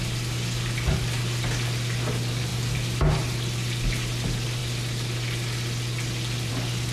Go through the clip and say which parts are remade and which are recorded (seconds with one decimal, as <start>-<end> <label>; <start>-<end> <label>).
0.0-6.9 recorded